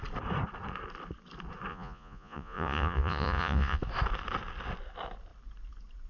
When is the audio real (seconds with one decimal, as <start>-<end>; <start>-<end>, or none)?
0.0-1.7; 3.8-6.1